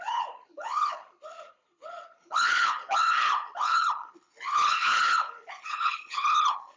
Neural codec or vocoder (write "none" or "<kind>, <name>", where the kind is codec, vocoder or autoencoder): codec, HILCodec